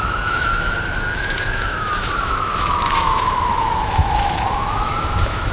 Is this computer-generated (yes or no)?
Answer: yes